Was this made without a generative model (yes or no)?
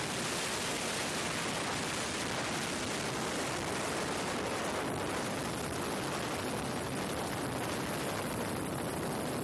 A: yes